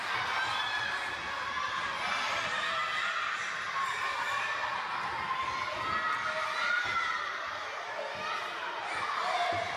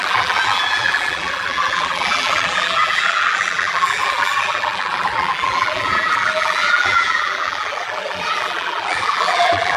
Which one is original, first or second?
first